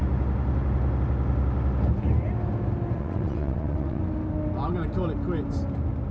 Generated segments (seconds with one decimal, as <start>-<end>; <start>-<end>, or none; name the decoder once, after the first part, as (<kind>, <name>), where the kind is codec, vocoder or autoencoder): 3.0-4.0 (vocoder, WaveNeXt)

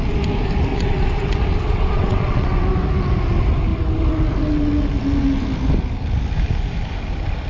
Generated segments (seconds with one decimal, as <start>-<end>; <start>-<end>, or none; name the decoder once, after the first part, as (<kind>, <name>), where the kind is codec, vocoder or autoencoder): 0.7-2.6 (vocoder, WaveNeXt)